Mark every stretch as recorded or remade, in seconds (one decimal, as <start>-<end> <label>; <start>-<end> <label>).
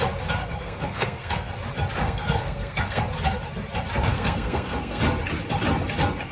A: 0.0-0.4 recorded; 0.4-1.5 remade; 1.5-2.0 recorded; 2.0-3.0 remade; 3.0-4.1 recorded; 4.1-5.0 remade; 5.0-6.3 recorded